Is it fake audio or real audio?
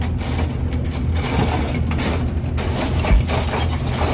real